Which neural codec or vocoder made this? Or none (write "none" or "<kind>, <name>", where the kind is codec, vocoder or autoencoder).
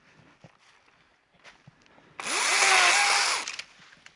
none